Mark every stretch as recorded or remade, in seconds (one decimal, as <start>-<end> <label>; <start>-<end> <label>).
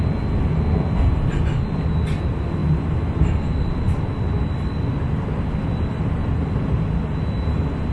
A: 0.0-7.9 recorded